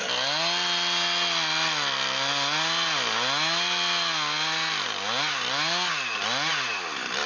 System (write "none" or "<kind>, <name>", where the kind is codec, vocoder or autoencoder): none